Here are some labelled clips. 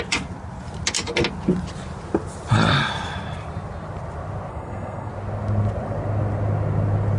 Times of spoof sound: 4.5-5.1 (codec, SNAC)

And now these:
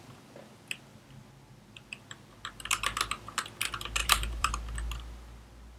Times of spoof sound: 4.0-4.5 (vocoder, BigVGAN v2)

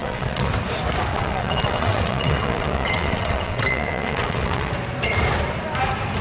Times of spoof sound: 0.0-0.5 (vocoder, WaveNeXt); 1.1-4.7

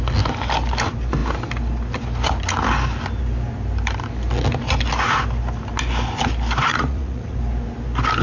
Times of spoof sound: 6.7-7.4 (vocoder, Vocos)

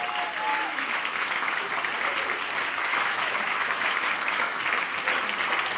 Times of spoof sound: 0.5-1.6 (autoencoder, DAC-VAE); 2.9-4.6

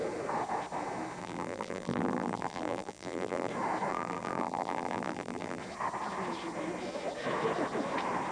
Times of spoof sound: 1.2-3.5 (vocoder, BigVGAN v2); 3.9-5.6

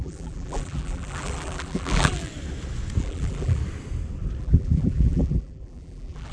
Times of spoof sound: 0.0-2.3 (vocoder, BigVGAN v2); 3.0-3.6; 4.4-6.3

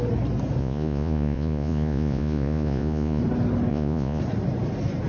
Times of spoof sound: 0.6-3.2 (vocoder, Vocos); 3.7-4.2